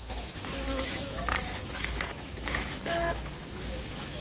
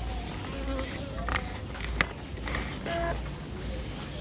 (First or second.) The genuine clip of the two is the second